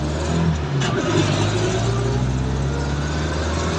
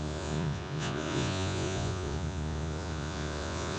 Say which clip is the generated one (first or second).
second